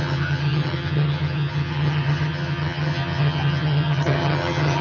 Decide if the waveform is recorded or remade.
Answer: remade